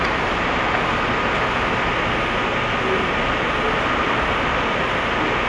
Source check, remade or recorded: recorded